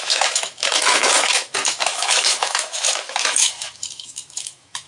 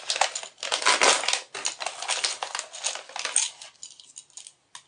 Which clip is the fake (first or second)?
first